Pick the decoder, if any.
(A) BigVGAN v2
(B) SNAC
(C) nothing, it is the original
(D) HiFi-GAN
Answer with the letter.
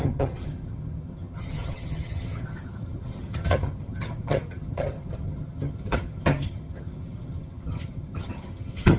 D